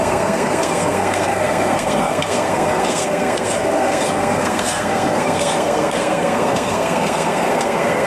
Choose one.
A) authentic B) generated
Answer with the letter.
B